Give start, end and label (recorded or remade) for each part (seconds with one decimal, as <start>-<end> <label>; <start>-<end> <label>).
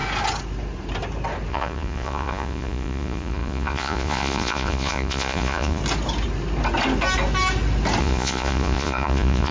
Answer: 0.0-1.5 recorded; 1.5-5.8 remade; 5.8-8.0 recorded; 8.0-9.5 remade